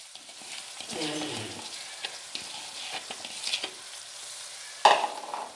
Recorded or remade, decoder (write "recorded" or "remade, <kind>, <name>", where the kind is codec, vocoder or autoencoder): recorded